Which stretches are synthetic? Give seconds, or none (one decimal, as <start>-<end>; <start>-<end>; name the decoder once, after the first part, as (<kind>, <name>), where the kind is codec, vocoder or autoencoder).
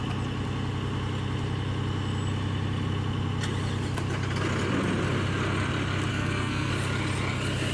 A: 6.1-6.7 (codec, SNAC)